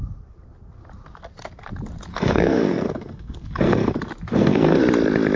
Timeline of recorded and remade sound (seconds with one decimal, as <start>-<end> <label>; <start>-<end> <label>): 0.0-2.1 recorded; 2.1-3.9 remade; 3.9-4.3 recorded; 4.3-4.8 remade; 4.8-5.4 recorded

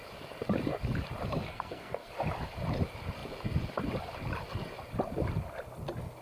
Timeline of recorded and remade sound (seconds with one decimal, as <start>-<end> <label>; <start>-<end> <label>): 0.0-1.5 recorded; 1.5-2.1 remade; 2.1-6.2 recorded

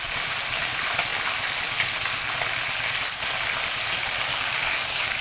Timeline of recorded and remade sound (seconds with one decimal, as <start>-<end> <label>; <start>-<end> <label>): 0.0-4.3 recorded; 4.3-5.2 remade

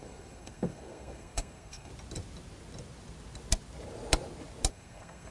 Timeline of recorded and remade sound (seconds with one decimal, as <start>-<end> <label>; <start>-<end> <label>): 0.0-1.9 remade; 1.9-4.7 recorded; 4.7-5.3 remade

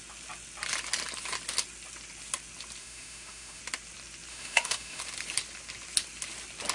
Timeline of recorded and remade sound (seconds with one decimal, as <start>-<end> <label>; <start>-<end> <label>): 0.0-2.8 recorded; 2.8-3.6 remade; 3.6-4.3 recorded; 4.3-5.0 remade; 5.0-6.7 recorded

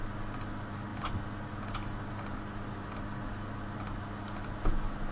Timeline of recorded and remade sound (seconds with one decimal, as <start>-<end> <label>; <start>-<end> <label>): 0.0-5.1 recorded